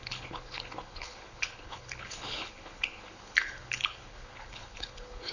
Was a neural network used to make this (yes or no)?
yes